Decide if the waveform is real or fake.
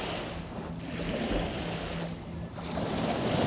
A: real